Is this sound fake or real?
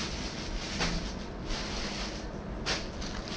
real